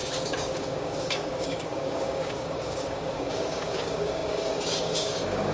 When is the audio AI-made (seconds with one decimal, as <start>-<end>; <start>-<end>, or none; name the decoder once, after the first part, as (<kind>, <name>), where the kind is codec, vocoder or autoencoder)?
0.0-5.5 (codec, DAC)